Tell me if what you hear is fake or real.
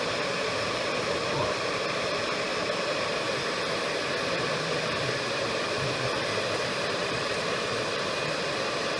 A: fake